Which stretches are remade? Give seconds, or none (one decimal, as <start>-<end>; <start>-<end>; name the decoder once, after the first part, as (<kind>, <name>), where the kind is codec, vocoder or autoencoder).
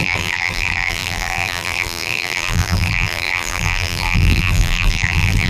0.0-5.5 (vocoder, BigVGAN v2)